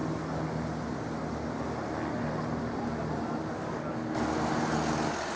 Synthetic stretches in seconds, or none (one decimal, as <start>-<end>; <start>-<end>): 3.4-4.2